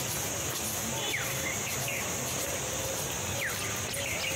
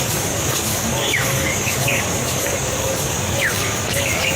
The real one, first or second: first